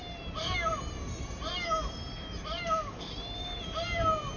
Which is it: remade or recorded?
recorded